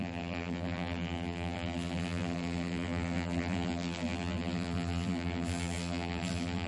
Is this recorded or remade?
remade